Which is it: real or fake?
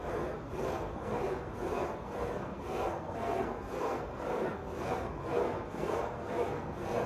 fake